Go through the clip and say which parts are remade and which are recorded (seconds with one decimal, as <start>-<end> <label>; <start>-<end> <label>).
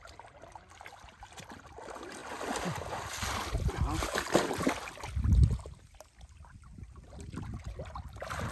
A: 0.0-8.5 recorded